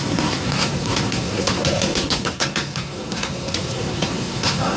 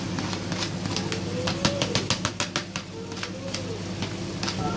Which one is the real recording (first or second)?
second